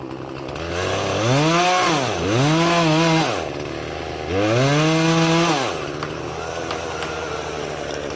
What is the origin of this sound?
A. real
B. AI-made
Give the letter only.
A